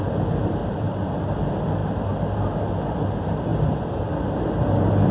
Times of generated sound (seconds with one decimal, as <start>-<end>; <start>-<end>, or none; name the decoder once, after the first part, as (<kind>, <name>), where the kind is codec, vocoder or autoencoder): 0.6-1.1 (vocoder, BigVGAN v2); 3.5-4.1